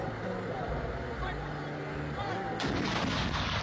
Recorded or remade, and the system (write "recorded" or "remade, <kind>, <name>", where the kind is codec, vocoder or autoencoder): recorded